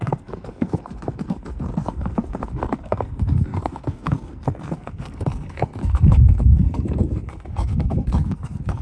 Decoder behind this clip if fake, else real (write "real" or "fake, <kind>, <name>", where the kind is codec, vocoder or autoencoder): fake, codec, SNAC